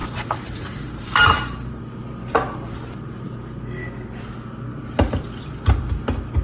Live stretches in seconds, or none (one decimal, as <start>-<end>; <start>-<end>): 1.8-6.4